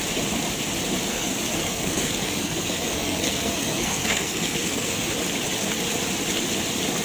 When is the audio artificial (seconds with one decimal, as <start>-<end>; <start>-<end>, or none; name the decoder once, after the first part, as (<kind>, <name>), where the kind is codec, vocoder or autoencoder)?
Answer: 1.1-5.1 (codec, SNAC)